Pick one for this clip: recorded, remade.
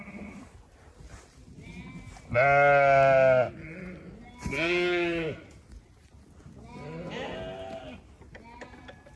recorded